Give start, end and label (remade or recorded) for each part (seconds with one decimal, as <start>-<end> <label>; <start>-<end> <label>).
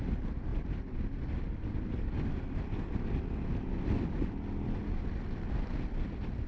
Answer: 0.0-6.5 recorded